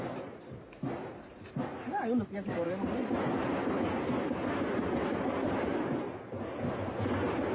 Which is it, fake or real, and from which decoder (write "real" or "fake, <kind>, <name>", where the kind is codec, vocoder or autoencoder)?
real